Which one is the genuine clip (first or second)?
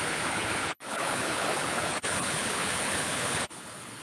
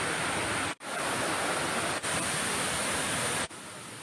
second